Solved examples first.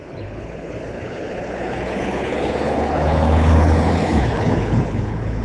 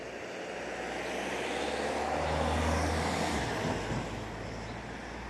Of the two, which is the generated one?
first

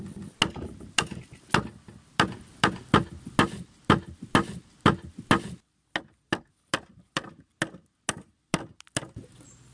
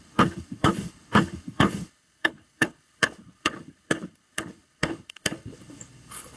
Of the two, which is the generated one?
second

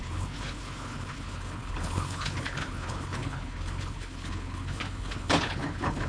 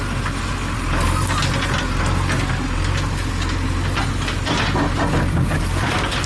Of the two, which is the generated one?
first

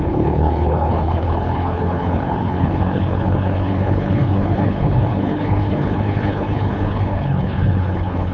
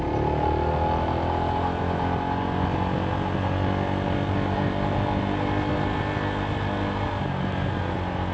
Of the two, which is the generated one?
first